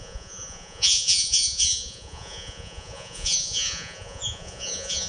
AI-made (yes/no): yes